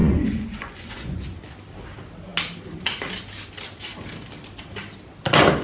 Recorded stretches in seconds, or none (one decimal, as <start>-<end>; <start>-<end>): 1.2-5.6